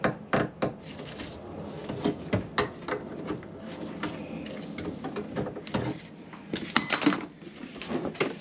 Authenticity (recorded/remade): recorded